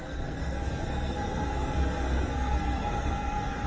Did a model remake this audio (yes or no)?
yes